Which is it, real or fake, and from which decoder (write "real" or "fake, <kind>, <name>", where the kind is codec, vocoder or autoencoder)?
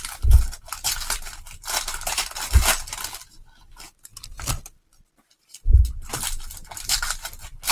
real